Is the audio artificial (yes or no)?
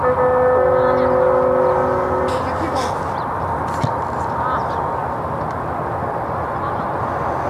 no